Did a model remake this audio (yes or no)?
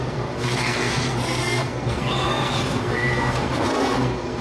yes